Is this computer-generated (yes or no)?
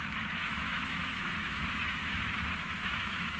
yes